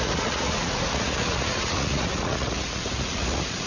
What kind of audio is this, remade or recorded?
remade